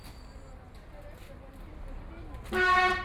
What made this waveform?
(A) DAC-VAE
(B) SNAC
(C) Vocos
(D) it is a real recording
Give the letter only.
D